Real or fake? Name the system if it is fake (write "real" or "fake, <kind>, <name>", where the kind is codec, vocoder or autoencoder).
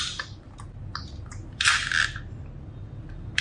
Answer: real